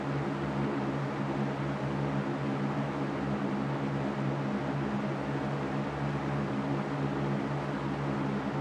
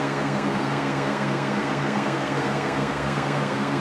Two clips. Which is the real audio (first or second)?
first